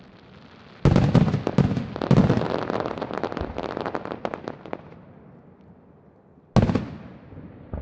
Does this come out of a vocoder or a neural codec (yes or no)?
no